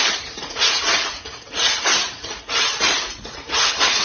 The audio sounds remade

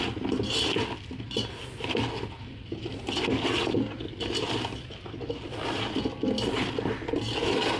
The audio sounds recorded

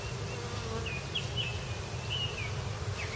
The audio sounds recorded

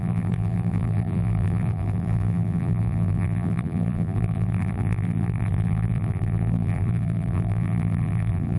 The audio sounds remade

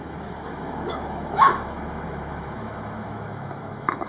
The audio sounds remade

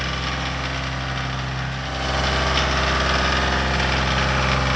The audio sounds recorded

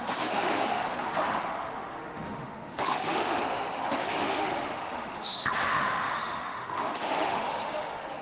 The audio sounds remade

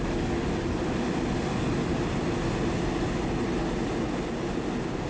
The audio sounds recorded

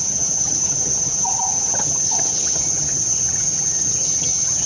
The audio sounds remade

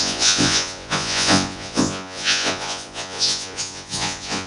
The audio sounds remade